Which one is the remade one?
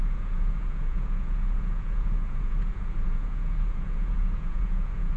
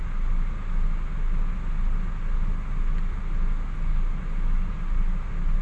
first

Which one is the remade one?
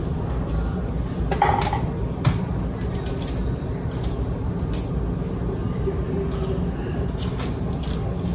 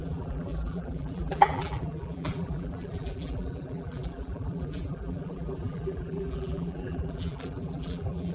second